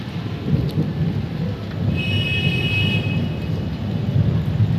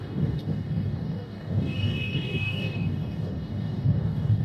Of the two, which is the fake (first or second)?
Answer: second